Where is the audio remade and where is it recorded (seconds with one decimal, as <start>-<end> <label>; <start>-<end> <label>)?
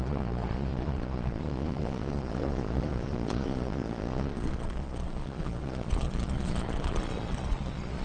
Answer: 0.0-8.0 remade